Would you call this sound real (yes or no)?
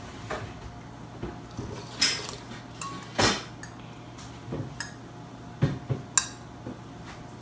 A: yes